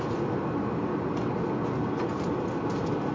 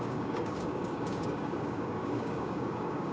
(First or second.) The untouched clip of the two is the first